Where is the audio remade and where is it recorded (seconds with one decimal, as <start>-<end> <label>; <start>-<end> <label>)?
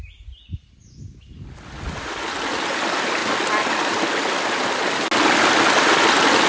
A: 0.0-6.5 recorded